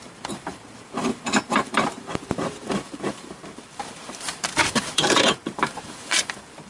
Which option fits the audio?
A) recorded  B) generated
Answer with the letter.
B